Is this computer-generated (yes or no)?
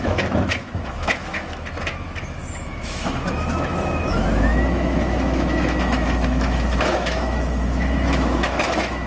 yes